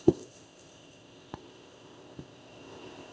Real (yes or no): no